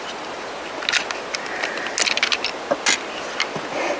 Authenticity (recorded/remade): recorded